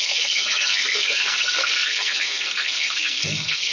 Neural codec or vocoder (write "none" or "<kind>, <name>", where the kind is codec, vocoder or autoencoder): codec, SNAC